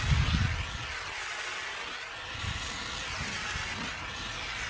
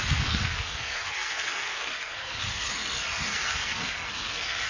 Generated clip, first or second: second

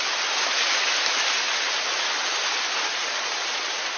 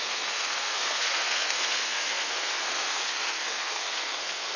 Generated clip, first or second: second